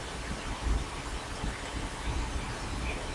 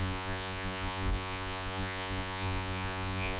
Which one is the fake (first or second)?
second